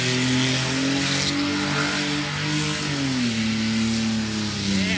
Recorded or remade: recorded